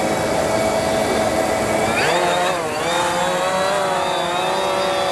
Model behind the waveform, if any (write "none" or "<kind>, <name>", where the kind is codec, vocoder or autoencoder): none